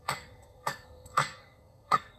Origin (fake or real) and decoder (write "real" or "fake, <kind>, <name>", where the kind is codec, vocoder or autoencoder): fake, codec, SNAC